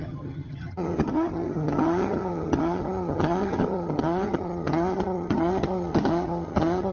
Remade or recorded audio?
remade